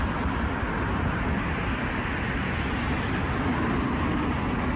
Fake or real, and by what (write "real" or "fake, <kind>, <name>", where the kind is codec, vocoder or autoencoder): real